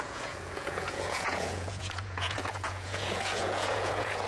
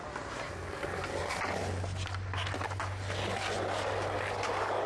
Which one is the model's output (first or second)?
first